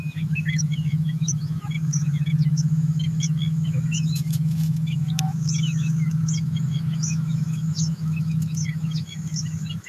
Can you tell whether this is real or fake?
fake